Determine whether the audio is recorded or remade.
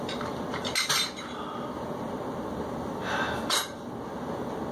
recorded